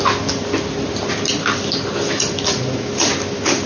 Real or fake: real